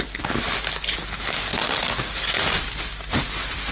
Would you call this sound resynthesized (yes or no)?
no